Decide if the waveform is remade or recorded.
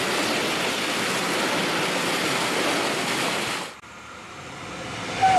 recorded